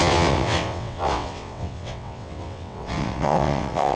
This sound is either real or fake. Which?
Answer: fake